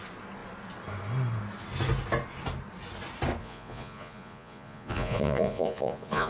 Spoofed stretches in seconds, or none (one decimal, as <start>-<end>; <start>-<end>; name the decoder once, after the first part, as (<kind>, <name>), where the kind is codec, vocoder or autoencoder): 3.4-6.3 (vocoder, Vocos)